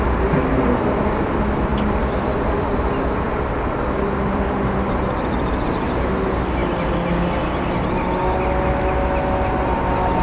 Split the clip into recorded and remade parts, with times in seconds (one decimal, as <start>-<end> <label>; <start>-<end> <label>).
0.0-1.7 recorded; 1.7-5.6 remade; 5.6-10.2 recorded